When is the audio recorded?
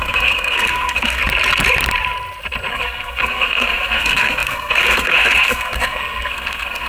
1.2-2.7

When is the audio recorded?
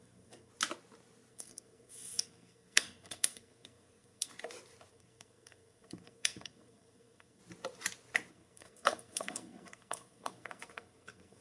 0.5-1.3; 4.3-4.9; 7.4-8.3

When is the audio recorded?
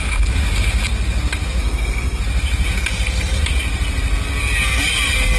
0.0-1.6; 2.2-5.4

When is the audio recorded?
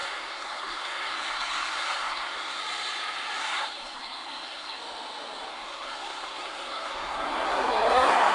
2.6-3.4; 4.8-5.5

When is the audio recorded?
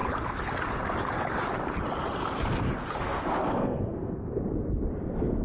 0.0-2.8; 4.3-5.4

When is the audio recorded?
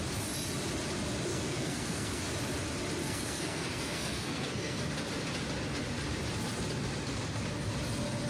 0.0-1.3; 2.2-3.0; 4.9-8.3